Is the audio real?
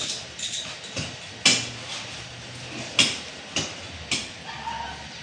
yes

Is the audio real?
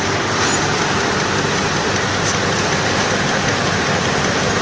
yes